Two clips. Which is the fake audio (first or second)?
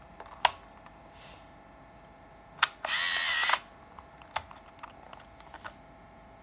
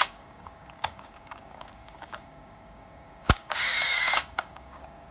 second